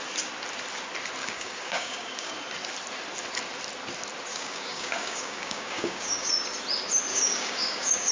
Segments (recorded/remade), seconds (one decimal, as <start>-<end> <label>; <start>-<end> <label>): 0.0-1.2 recorded; 1.2-2.3 remade; 2.3-4.3 recorded; 4.3-6.3 remade; 6.3-7.1 recorded; 7.1-8.1 remade